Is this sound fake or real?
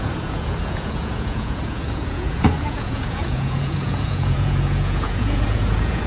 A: fake